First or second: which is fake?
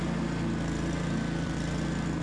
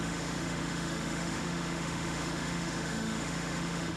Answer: second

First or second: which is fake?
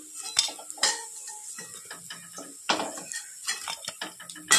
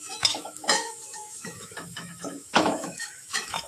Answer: second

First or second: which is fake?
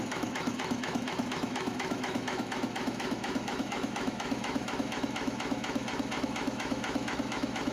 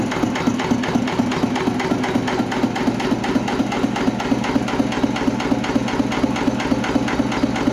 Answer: first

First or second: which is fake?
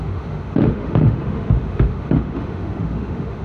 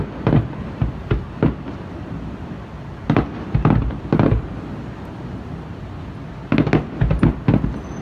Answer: first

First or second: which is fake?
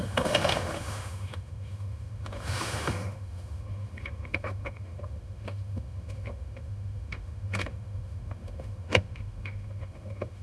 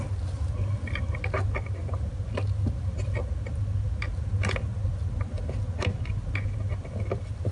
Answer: first